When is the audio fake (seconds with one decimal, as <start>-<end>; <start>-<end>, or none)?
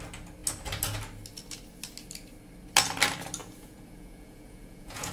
3.4-5.1